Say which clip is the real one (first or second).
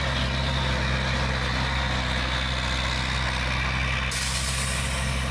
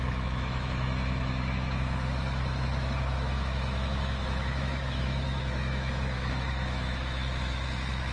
first